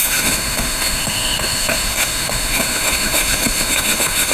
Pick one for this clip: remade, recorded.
remade